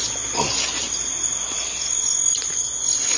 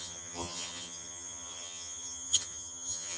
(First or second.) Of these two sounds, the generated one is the second